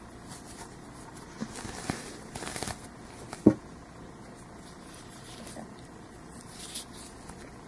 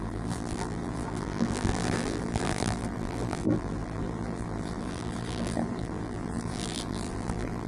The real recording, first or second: first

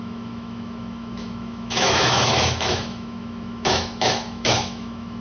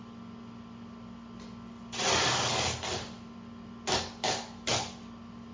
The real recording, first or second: second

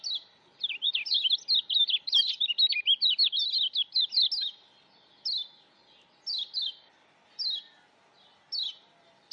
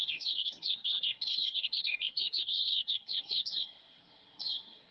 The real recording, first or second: first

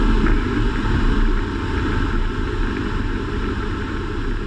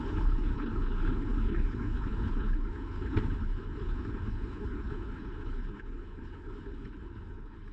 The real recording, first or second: first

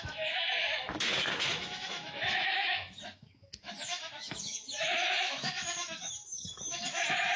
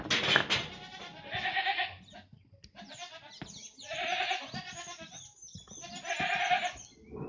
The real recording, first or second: second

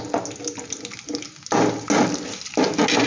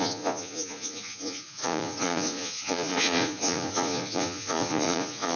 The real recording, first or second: first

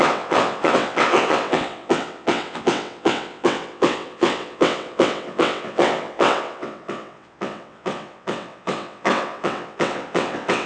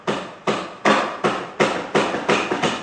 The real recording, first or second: second